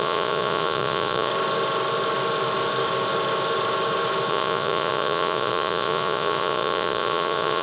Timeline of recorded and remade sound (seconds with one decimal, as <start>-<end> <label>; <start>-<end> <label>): 0.0-1.3 remade; 1.3-4.3 recorded; 4.3-7.6 remade